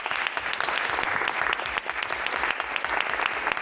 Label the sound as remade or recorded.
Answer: recorded